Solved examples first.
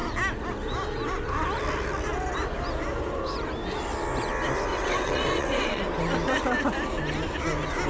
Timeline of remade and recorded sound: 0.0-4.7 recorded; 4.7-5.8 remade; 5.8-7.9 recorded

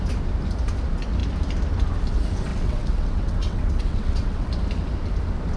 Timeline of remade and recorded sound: 0.0-2.5 recorded; 2.5-4.5 remade; 4.5-5.6 recorded

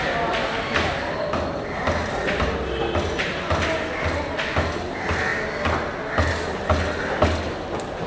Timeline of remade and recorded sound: 0.0-8.1 recorded

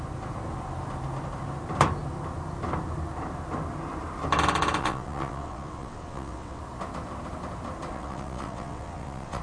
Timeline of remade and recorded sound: 0.0-4.8 recorded; 4.8-6.6 remade; 6.6-7.9 recorded; 7.9-9.4 remade